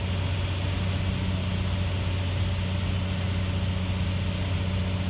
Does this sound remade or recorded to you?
recorded